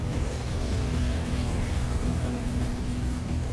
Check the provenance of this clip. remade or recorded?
remade